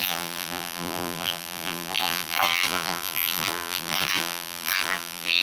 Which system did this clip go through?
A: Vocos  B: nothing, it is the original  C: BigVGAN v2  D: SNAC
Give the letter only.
C